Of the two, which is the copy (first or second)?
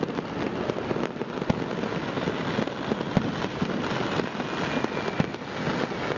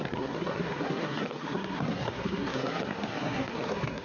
second